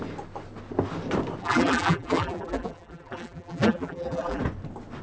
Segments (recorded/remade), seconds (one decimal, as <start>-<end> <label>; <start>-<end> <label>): 0.0-1.4 recorded; 1.4-4.4 remade; 4.4-5.0 recorded